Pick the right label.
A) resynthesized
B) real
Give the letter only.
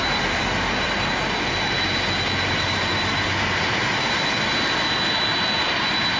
B